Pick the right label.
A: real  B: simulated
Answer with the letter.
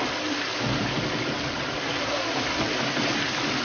A